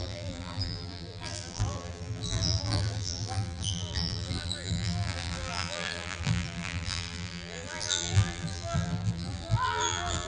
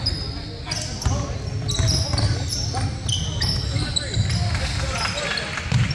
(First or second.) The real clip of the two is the second